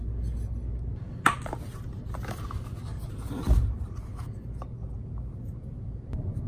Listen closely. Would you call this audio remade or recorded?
recorded